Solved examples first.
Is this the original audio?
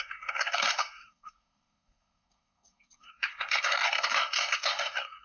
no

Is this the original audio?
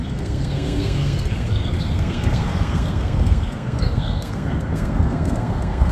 no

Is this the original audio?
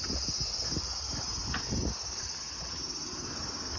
yes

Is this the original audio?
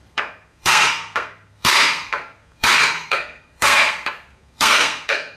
no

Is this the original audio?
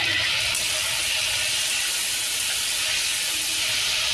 yes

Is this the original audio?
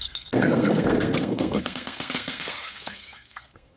no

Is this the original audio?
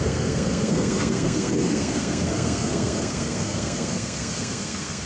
no